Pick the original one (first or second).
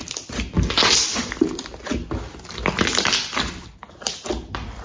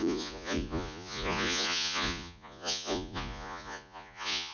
first